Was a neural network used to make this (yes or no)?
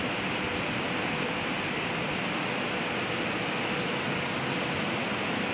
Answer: no